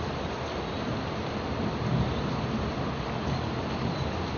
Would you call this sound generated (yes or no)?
no